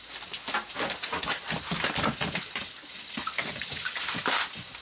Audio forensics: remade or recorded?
recorded